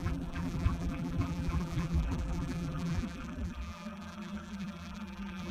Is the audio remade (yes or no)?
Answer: yes